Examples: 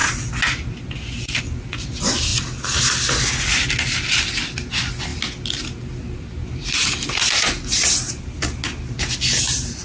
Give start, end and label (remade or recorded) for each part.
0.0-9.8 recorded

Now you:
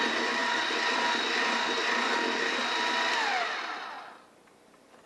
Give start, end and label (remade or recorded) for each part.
0.0-5.1 recorded

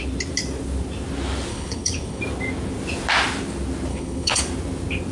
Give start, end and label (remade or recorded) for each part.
0.0-1.5 recorded; 1.5-2.2 remade; 2.2-3.9 recorded; 3.9-4.4 remade; 4.4-5.1 recorded